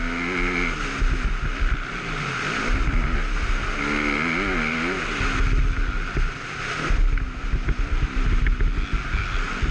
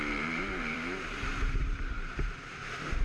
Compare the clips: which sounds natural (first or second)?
first